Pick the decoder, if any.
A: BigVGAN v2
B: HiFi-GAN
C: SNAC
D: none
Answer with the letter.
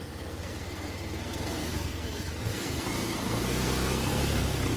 C